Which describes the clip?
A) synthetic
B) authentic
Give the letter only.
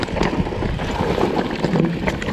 B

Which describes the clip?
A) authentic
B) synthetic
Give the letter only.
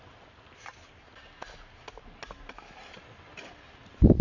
A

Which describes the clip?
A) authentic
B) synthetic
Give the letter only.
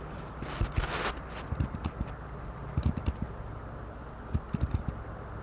A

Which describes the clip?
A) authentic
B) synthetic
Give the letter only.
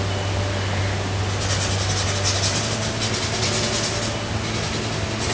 A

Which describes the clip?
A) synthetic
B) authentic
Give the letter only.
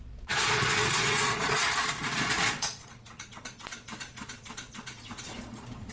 A